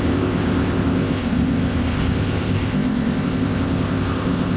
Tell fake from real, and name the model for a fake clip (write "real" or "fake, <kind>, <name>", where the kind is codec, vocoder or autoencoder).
fake, codec, ZipCodec